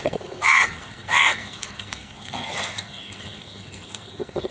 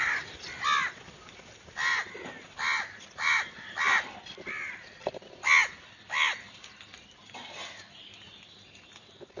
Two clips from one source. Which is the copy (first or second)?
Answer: first